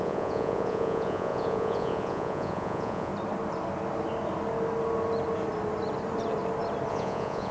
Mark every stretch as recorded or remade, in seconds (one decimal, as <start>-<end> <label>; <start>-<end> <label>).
0.0-3.1 remade; 3.1-6.9 recorded; 6.9-7.5 remade

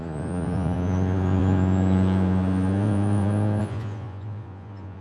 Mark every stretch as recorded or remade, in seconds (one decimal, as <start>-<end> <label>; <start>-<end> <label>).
0.0-5.0 remade

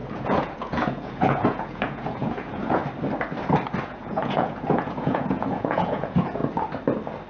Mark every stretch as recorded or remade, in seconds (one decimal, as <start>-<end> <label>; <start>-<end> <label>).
0.0-2.8 remade; 2.8-3.8 recorded; 3.8-6.4 remade; 6.4-7.3 recorded

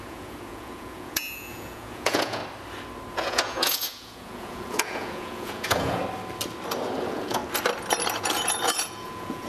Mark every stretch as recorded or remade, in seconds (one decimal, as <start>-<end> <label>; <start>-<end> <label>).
0.0-2.4 remade; 2.4-3.1 recorded; 3.1-6.0 remade; 6.0-7.0 recorded; 7.0-7.4 remade; 7.4-8.1 recorded; 8.1-9.5 remade

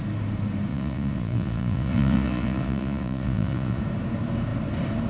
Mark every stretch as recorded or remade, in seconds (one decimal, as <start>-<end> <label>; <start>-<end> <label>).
0.0-0.7 recorded; 0.7-3.8 remade; 3.8-5.1 recorded

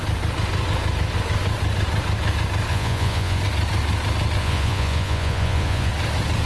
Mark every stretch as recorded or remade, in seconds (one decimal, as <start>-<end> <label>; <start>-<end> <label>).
0.0-2.7 recorded; 2.7-3.4 remade; 3.4-4.4 recorded; 4.4-5.9 remade; 5.9-6.5 recorded

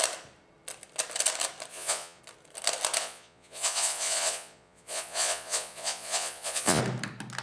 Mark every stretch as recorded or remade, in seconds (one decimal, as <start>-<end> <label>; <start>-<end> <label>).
0.0-1.7 recorded; 1.7-2.2 remade; 2.2-3.0 recorded; 3.0-6.8 remade; 6.8-7.4 recorded

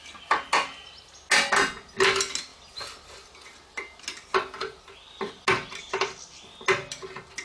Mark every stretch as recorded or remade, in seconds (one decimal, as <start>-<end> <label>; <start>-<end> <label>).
0.0-7.4 recorded